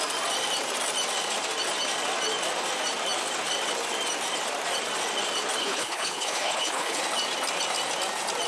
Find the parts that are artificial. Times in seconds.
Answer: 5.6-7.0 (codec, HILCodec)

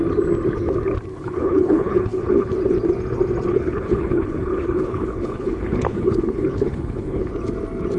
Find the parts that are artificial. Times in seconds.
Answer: 1.1-2.5 (codec, HILCodec); 3.5-7.3